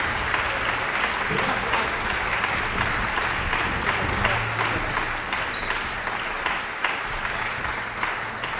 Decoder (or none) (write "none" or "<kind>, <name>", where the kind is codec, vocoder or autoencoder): none